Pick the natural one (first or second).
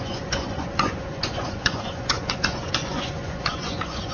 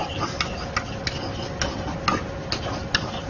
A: second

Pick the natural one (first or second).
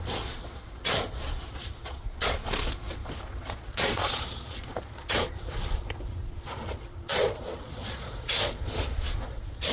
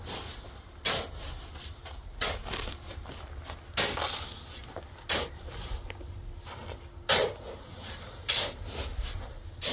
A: second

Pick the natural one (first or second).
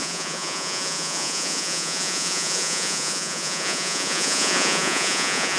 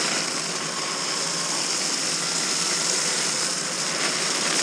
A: second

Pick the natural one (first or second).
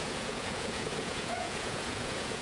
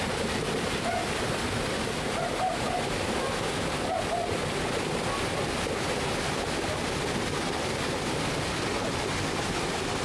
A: second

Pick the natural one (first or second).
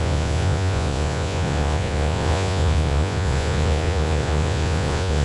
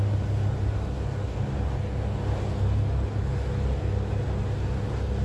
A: second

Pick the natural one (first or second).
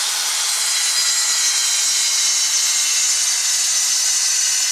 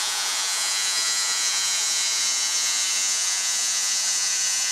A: first